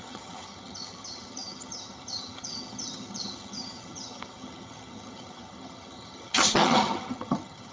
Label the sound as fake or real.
fake